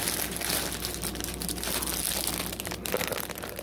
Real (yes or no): yes